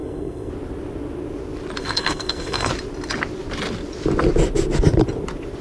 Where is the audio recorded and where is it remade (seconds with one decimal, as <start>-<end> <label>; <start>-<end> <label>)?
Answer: 0.0-0.5 remade; 0.5-1.8 recorded; 1.8-2.7 remade; 2.7-5.6 recorded